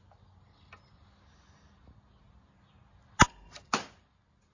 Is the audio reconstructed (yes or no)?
no